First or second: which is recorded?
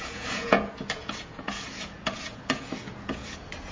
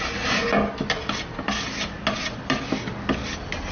second